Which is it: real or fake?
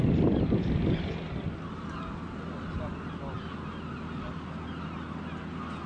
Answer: real